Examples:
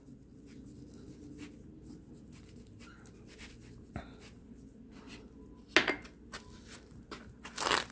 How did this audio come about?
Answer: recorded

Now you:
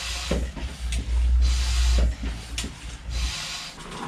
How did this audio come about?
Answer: recorded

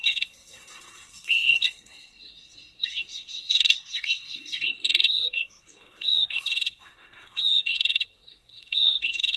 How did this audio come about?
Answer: remade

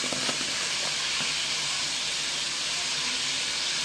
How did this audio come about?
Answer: recorded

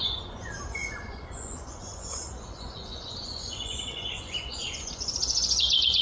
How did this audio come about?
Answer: remade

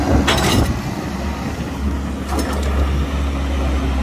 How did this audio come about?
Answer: recorded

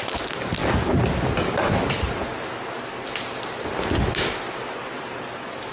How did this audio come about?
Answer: recorded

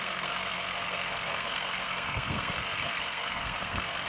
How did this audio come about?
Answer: remade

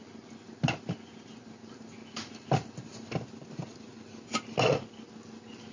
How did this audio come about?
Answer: recorded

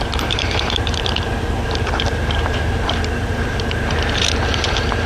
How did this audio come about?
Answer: remade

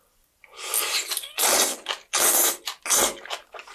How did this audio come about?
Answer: recorded